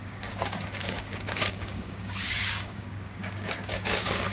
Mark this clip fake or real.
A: fake